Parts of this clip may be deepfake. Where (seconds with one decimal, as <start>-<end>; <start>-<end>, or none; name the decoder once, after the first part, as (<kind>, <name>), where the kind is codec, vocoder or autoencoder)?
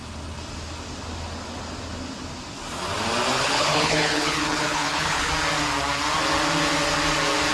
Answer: 3.3-5.3 (codec, HILCodec)